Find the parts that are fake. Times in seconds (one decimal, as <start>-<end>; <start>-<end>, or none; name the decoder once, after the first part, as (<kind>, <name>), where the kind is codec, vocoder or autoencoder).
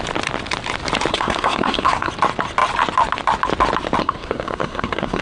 1.1-2.1 (codec, SNAC); 4.0-5.2